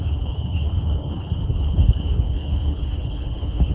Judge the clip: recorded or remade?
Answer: remade